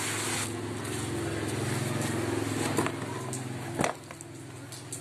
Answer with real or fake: real